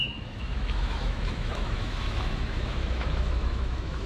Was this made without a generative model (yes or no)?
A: no